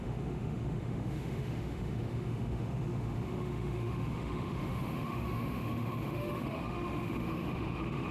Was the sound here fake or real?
fake